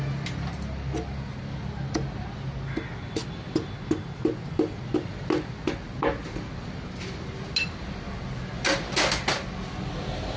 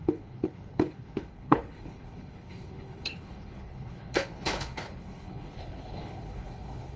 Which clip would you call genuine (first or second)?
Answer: first